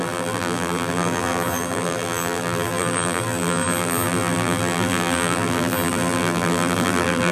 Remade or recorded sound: remade